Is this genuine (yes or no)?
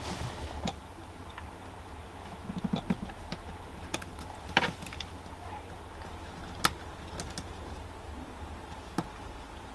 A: yes